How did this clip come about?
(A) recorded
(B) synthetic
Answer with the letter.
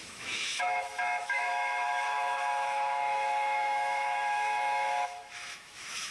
B